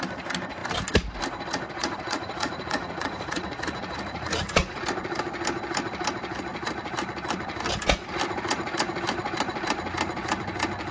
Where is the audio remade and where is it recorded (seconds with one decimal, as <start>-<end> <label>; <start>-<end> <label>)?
0.0-1.8 recorded; 1.8-4.8 remade; 4.8-10.9 recorded